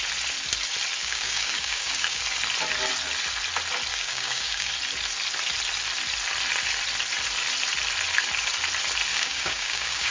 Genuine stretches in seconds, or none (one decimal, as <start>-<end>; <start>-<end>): 0.0-1.0; 2.2-3.9; 4.7-9.1